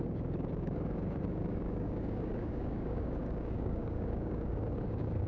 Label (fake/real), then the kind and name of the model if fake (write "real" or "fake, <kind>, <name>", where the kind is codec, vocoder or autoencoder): fake, codec, DAC